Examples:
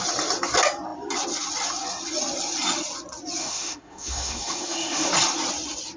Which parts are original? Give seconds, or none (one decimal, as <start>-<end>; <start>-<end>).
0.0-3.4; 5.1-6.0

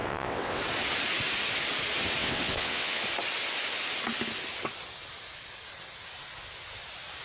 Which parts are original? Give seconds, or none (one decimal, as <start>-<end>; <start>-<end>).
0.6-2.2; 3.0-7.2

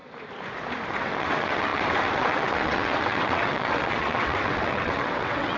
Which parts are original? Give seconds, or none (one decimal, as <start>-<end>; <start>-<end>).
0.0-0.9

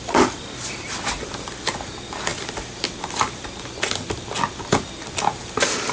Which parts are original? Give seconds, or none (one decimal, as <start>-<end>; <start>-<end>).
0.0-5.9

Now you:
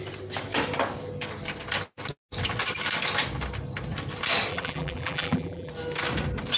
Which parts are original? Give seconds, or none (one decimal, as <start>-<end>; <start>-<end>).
0.0-4.5; 5.7-6.6

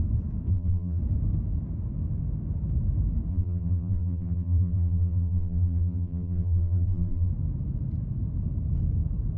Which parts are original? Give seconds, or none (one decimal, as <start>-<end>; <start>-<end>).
0.0-0.5; 1.0-3.3; 7.3-9.4

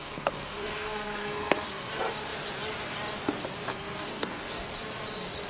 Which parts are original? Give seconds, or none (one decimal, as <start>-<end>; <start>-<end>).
1.9-3.7; 4.4-5.5

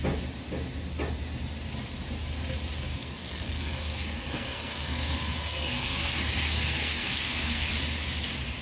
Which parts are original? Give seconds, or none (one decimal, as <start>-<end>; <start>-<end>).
0.0-3.0; 7.7-8.6